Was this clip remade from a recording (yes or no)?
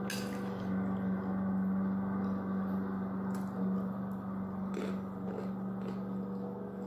no